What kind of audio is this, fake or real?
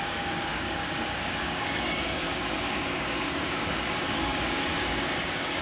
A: fake